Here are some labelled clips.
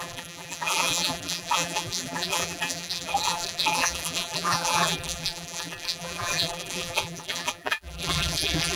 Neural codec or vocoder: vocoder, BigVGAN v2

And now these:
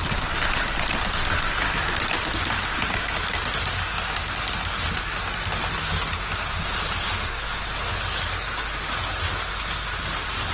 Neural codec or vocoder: none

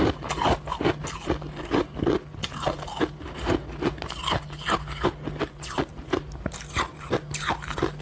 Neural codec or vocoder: none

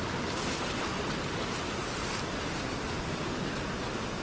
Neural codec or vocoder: none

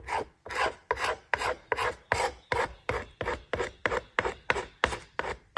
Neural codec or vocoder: none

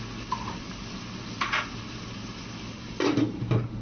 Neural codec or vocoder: none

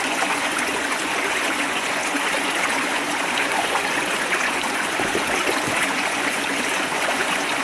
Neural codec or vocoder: vocoder, Vocos